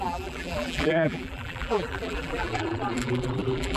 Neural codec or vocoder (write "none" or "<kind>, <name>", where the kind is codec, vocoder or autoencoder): vocoder, BigVGAN v2